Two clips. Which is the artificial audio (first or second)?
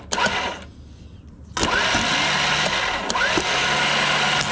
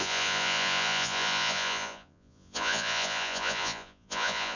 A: second